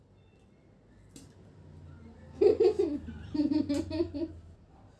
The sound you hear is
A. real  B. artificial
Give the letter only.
A